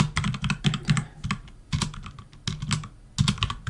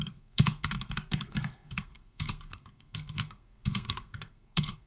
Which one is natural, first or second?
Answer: first